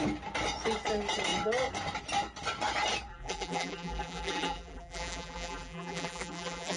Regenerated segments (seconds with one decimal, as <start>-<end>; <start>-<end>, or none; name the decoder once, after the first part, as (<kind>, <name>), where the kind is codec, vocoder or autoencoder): 3.1-6.8 (vocoder, BigVGAN v2)